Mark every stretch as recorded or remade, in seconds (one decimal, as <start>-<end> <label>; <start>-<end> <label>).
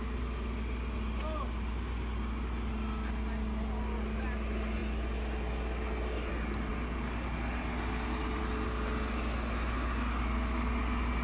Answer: 0.0-11.2 recorded